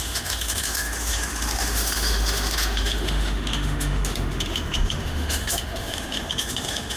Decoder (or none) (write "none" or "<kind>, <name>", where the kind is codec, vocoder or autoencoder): autoencoder, DAC-VAE